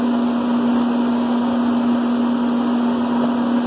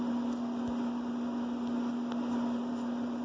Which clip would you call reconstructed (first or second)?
second